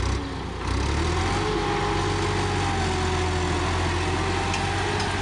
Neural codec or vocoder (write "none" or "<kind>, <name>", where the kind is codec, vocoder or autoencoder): none